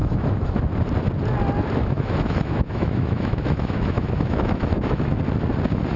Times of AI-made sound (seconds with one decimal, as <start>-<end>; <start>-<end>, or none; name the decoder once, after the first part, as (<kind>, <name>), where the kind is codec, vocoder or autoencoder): 0.0-0.6 (autoencoder, DAC-VAE); 1.8-5.1